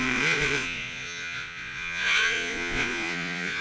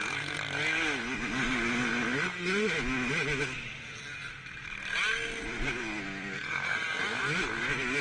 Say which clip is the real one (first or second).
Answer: second